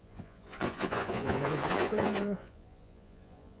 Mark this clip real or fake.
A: fake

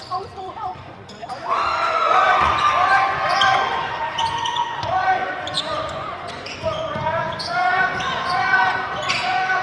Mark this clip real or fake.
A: fake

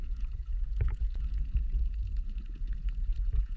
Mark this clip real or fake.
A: fake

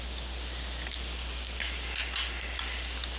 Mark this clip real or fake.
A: real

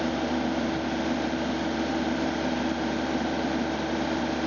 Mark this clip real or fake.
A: real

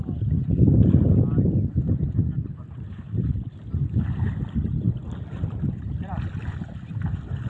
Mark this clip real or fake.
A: real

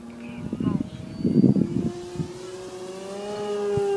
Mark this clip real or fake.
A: real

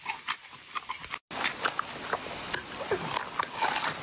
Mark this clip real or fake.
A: real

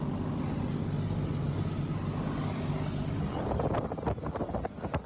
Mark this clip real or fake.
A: real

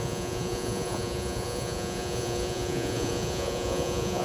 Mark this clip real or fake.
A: fake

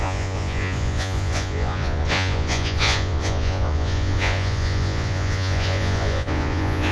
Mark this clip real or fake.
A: fake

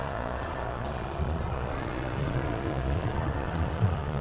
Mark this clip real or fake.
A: fake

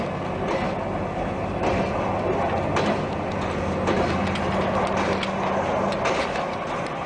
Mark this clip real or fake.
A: real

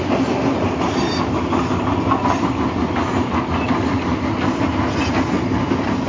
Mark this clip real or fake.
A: real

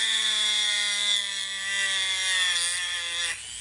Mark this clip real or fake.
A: real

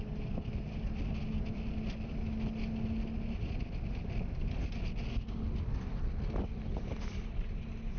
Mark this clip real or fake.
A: real